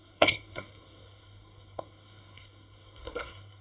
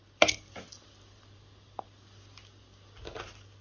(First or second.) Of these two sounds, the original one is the second